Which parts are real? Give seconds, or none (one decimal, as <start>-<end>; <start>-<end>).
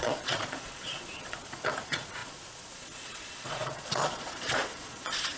none